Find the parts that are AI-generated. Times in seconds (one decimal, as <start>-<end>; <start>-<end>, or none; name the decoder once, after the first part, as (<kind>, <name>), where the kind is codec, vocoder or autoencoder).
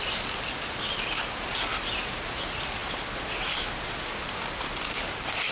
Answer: none